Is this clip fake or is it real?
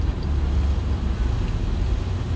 real